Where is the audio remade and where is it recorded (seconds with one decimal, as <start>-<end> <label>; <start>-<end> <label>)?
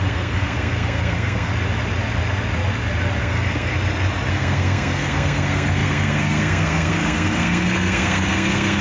0.0-1.5 remade; 1.5-3.2 recorded; 3.2-3.7 remade; 3.7-4.3 recorded; 4.3-8.8 remade